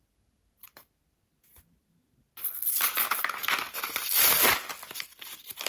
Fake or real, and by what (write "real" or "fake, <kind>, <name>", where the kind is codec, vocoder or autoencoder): real